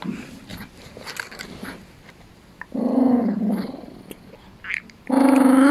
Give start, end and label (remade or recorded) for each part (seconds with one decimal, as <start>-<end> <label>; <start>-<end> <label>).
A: 0.0-5.7 recorded